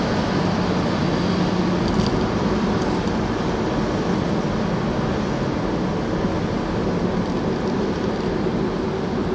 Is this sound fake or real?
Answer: real